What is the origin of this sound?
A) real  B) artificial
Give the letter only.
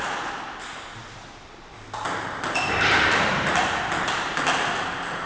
A